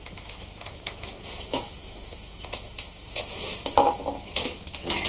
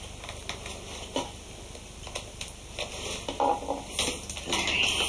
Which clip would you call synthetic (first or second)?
first